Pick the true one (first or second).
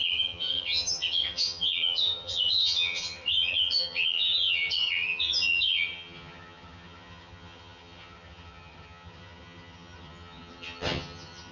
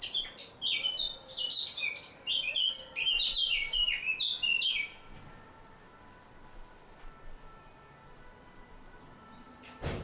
second